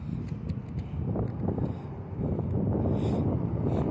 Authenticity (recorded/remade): recorded